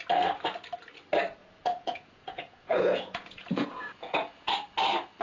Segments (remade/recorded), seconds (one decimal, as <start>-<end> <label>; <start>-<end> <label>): 0.0-1.4 recorded; 1.4-4.5 remade; 4.5-5.2 recorded